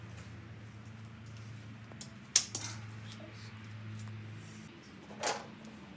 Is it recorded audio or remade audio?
recorded